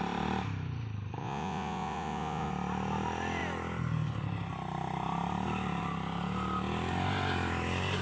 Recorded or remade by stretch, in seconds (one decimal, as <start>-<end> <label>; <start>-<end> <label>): 0.0-1.2 recorded; 1.2-2.5 remade; 2.5-8.0 recorded